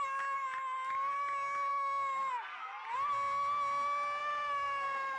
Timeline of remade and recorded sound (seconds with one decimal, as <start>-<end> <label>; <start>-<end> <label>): 0.0-1.7 recorded; 1.7-2.3 remade; 2.3-4.2 recorded; 4.2-5.2 remade